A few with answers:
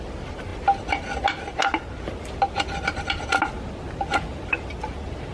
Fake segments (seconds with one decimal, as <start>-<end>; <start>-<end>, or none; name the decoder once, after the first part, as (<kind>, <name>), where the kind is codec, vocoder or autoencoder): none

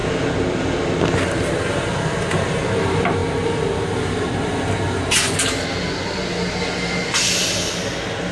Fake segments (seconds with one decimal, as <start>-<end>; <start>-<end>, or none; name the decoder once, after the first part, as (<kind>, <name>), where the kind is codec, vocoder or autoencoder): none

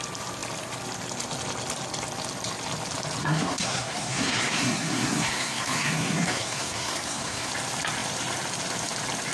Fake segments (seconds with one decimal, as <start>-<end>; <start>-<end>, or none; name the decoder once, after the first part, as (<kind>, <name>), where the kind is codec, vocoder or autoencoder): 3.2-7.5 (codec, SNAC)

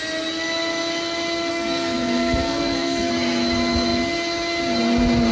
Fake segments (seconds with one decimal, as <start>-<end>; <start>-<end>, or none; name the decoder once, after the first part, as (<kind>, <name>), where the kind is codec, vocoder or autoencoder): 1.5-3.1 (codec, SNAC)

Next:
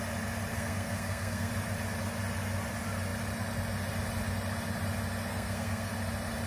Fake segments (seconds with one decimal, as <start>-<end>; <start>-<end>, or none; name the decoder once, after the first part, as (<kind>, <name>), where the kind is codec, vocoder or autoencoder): 0.5-1.5 (codec, SNAC); 5.3-5.9

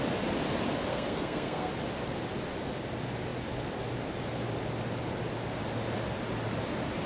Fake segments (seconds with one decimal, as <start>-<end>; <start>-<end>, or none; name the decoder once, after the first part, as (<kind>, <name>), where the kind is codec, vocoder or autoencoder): 0.9-1.7 (codec, SNAC)